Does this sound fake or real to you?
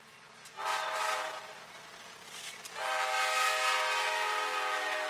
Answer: real